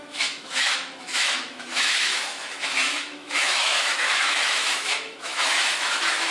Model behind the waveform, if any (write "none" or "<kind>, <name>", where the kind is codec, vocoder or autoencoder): autoencoder, DAC-VAE